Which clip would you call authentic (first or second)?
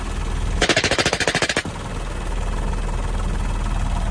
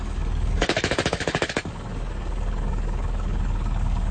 first